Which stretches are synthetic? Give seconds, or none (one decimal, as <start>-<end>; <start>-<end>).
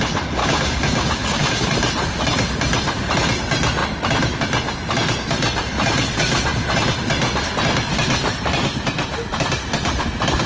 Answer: 0.4-1.7